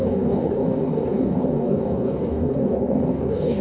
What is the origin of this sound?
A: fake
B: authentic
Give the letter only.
A